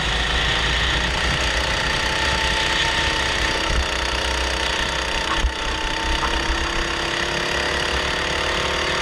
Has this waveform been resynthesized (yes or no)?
no